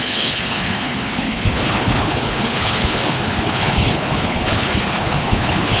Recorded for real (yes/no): no